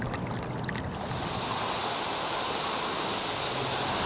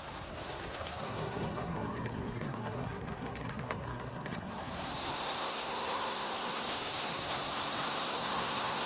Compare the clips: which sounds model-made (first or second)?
second